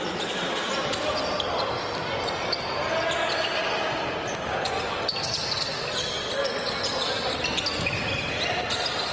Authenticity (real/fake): real